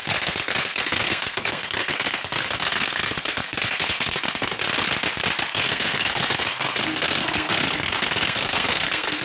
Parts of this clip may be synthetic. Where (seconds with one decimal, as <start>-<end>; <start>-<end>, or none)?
0.0-4.6; 5.5-9.2

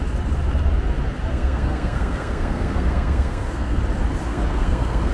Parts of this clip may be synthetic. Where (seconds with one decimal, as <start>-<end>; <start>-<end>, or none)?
1.3-3.8; 4.3-5.1

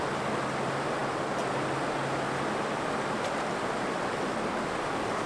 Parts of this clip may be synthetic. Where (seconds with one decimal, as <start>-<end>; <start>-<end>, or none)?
none

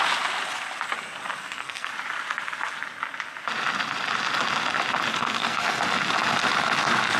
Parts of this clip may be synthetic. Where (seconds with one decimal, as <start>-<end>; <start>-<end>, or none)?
1.4-1.9; 5.1-5.8

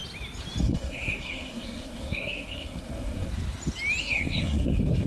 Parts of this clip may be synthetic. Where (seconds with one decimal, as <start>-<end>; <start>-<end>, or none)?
0.6-3.3; 4.0-5.1

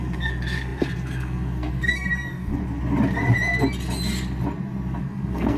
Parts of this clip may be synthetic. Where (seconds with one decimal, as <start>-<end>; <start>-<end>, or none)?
0.0-2.6; 5.0-5.6

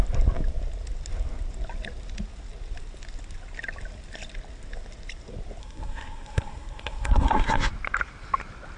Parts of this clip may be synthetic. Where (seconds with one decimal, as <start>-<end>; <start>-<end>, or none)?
5.6-7.7